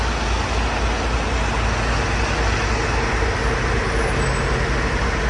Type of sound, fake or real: real